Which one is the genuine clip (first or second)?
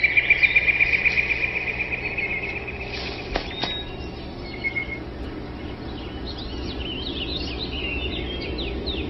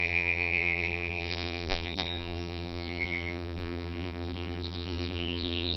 first